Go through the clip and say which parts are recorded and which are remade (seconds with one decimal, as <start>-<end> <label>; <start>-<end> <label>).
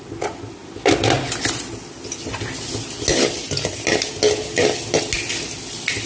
0.0-6.1 recorded